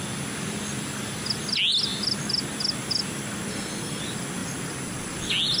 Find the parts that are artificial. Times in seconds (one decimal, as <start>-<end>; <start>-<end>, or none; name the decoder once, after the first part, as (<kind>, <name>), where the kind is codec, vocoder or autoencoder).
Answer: 3.5-4.0 (codec, SNAC)